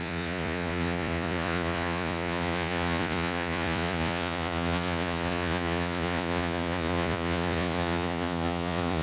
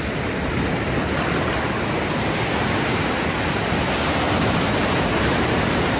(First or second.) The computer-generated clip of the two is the first